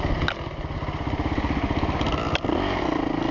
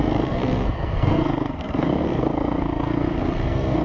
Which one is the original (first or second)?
first